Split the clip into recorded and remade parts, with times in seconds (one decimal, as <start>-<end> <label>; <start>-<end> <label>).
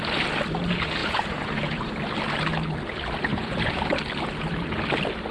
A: 0.0-1.0 recorded; 1.0-1.9 remade; 1.9-3.3 recorded; 3.3-3.9 remade; 3.9-5.3 recorded